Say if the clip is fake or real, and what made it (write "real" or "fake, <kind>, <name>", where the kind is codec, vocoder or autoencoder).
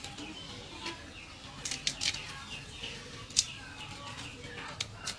real